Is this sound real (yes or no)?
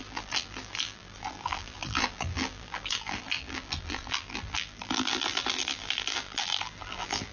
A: no